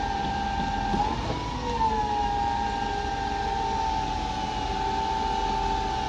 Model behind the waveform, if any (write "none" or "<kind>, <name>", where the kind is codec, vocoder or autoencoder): none